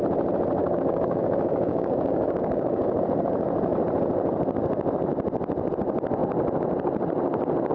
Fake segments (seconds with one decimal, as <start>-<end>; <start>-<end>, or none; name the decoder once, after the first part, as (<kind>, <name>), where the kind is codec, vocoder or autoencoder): 0.6-3.0 (codec, DAC)